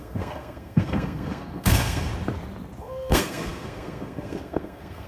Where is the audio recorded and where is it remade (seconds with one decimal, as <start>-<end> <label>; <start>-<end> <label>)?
0.0-2.1 remade; 2.1-2.8 recorded; 2.8-5.1 remade